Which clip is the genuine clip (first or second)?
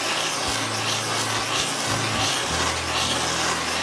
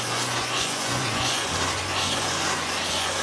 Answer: first